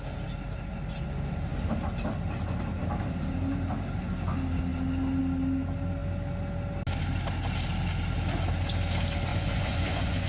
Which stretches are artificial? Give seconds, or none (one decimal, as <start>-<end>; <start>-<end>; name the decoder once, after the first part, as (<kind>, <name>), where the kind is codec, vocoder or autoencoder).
9.3-10.3 (vocoder, Vocos)